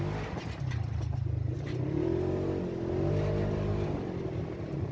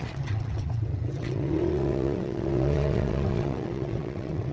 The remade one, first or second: second